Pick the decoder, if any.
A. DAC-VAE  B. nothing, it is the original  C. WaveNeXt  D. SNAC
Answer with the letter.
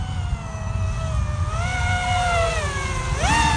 B